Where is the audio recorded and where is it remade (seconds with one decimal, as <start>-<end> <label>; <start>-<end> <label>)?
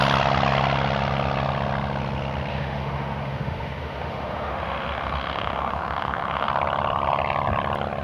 0.0-2.5 recorded; 2.5-6.5 remade; 6.5-8.0 recorded